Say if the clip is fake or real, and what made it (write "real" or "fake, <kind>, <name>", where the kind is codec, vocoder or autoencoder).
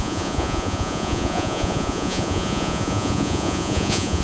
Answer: fake, vocoder, Vocos